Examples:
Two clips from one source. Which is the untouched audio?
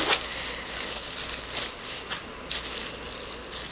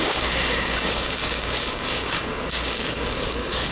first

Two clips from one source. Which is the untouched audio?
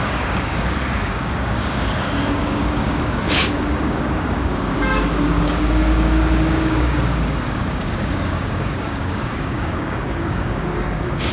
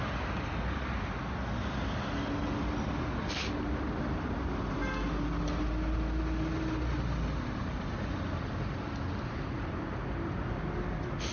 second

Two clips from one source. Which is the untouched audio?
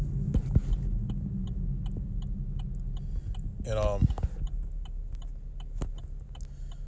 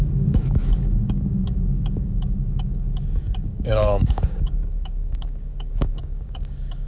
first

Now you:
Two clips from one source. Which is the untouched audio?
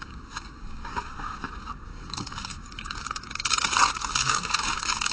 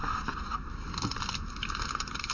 second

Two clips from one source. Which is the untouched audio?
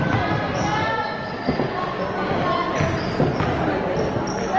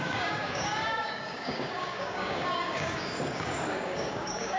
first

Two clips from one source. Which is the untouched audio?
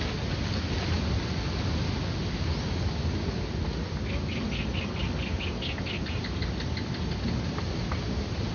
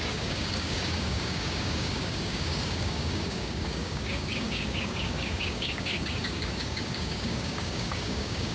first